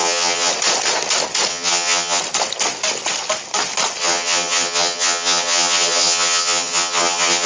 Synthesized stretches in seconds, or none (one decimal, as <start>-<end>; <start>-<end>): 0.0-0.5; 1.5-2.2; 4.0-7.5

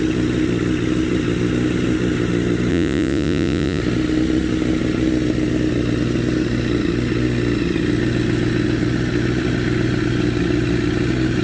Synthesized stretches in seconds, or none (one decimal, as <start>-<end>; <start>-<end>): 2.7-3.8

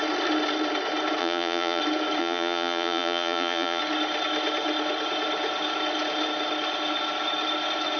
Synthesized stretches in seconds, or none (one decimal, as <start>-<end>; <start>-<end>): 1.2-1.8; 2.2-3.8

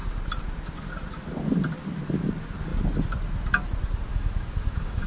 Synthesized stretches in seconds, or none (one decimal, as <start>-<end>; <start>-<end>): 4.1-5.1

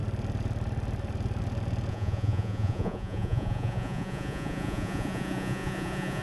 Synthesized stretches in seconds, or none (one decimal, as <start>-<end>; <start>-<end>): 1.9-6.2

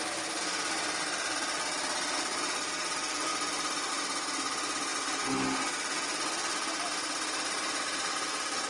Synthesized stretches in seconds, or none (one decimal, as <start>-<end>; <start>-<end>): none

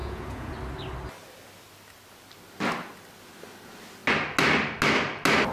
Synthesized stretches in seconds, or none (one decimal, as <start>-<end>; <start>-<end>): 0.0-0.5

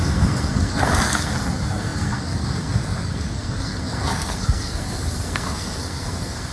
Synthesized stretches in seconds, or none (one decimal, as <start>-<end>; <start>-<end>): 0.0-6.5